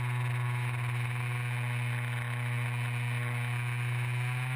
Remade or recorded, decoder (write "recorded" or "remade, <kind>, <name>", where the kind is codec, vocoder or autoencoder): recorded